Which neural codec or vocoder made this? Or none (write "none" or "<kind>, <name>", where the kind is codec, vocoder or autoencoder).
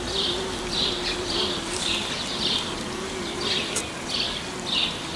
none